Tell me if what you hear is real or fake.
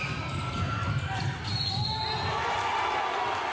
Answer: real